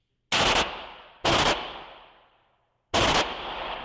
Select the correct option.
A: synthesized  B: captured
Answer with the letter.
B